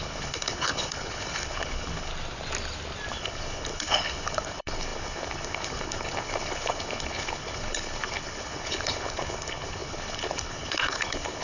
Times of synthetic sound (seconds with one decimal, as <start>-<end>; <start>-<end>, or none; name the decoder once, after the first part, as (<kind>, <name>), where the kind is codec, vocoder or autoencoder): 0.0-2.1 (codec, HILCodec); 3.1-11.4

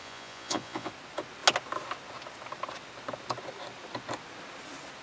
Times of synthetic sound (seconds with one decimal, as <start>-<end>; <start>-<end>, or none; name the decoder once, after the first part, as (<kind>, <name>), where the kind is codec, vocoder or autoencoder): 0.0-0.9 (vocoder, Vocos)

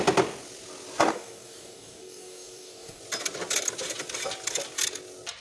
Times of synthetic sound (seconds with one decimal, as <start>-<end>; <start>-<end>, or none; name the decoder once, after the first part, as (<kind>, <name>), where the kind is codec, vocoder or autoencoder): 1.1-3.0 (codec, DAC)

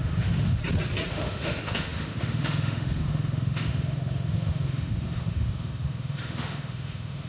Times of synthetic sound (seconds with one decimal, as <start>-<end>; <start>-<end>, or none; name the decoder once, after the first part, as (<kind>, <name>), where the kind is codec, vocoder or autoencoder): 0.0-0.6 (autoencoder, DAC-VAE); 1.1-7.3

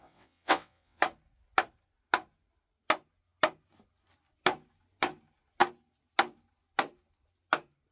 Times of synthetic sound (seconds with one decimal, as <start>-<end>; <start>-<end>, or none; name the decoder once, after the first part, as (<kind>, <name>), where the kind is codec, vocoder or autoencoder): 0.0-1.0 (vocoder, WaveNeXt)

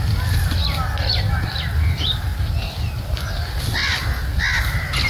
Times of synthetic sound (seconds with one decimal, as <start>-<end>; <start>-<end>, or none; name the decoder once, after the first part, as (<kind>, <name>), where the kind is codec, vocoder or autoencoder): none

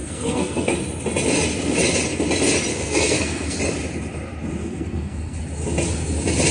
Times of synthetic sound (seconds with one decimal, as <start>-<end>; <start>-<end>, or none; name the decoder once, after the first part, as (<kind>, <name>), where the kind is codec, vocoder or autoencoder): 0.0-0.7 (codec, SNAC); 2.7-3.6; 4.6-5.4

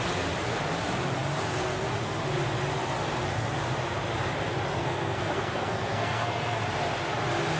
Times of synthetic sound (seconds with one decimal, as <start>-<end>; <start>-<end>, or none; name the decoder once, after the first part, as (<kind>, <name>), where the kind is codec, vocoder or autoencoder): 4.8-6.6 (codec, SNAC)